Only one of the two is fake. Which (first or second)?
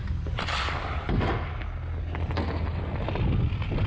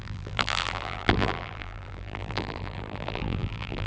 second